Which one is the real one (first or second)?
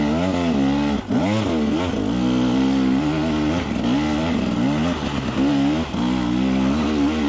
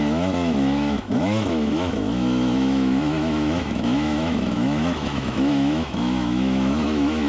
first